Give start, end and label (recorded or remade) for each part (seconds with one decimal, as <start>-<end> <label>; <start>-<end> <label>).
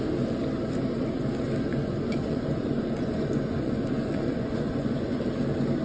0.0-1.7 recorded; 1.7-5.2 remade; 5.2-5.8 recorded